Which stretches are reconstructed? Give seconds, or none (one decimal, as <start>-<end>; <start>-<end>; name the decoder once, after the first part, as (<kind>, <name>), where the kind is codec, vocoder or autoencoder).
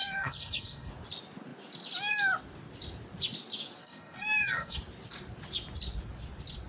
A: 0.0-0.9 (codec, SNAC); 3.8-4.8